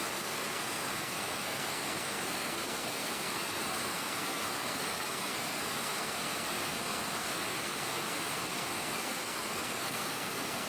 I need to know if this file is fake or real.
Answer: fake